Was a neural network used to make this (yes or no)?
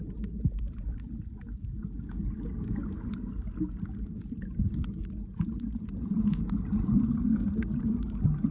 no